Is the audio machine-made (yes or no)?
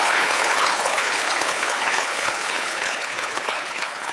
yes